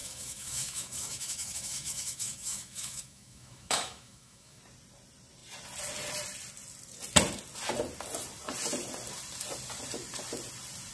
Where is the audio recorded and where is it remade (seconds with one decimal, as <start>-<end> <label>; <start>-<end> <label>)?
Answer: 0.0-4.6 remade; 4.6-10.9 recorded

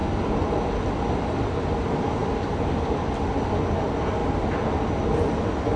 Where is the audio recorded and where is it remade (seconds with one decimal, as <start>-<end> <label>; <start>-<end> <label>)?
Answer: 0.0-5.8 recorded

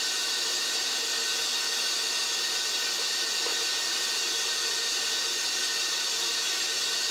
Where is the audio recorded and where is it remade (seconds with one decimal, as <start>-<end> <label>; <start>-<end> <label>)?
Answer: 0.0-7.1 recorded

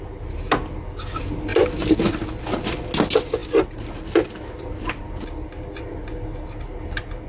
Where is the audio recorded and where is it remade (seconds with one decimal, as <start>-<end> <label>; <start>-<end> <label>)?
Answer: 0.0-7.3 recorded